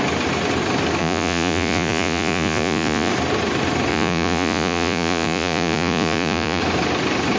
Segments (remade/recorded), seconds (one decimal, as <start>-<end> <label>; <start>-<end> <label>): 0.0-1.0 recorded; 1.0-3.1 remade; 3.1-3.9 recorded; 3.9-6.6 remade; 6.6-7.4 recorded

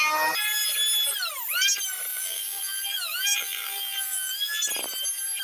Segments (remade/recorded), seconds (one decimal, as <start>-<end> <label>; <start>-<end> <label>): 0.0-2.1 recorded; 2.1-4.6 remade; 4.6-5.4 recorded